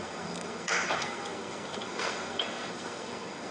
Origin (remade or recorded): remade